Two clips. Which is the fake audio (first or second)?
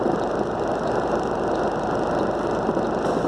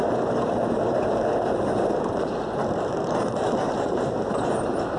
second